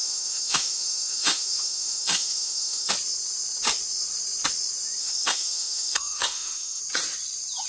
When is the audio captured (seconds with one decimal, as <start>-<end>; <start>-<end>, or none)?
2.9-5.0; 6.8-7.7